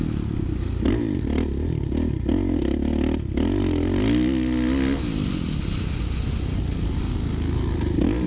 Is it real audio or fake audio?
real